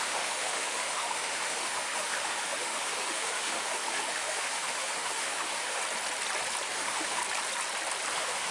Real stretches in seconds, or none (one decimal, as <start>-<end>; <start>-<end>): 5.8-6.7; 7.2-8.1